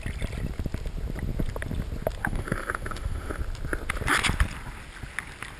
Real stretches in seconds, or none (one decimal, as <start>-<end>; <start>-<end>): 0.0-2.2; 3.4-5.6